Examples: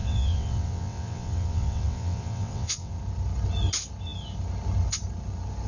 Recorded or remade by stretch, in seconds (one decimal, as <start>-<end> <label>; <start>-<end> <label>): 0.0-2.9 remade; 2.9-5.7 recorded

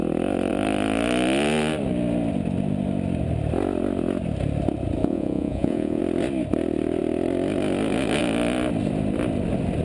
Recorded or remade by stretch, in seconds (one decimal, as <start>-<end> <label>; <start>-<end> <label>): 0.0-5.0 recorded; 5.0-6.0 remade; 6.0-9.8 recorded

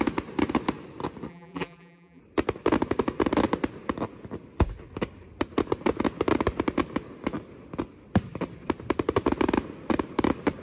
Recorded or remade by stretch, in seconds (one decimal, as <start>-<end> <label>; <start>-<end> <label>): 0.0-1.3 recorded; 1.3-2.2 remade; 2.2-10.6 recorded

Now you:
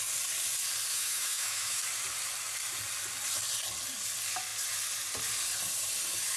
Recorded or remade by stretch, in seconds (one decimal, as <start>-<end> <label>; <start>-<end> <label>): 0.0-0.9 recorded; 0.9-1.8 remade; 1.8-6.4 recorded

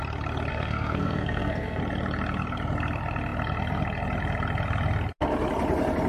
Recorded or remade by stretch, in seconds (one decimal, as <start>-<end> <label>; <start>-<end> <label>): 0.0-0.5 recorded; 0.5-1.8 remade; 1.8-6.1 recorded

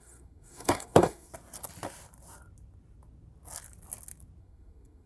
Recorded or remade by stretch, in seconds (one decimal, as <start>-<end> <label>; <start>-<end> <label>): 0.0-1.3 remade; 1.3-4.4 recorded; 4.4-5.1 remade

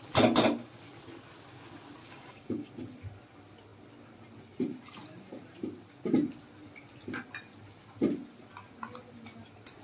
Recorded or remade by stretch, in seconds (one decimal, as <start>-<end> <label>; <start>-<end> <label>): 0.0-2.0 recorded; 2.0-2.7 remade; 2.7-9.8 recorded

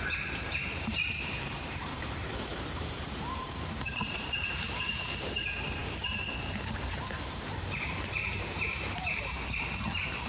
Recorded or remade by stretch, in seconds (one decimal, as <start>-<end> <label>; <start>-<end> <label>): 0.0-10.3 remade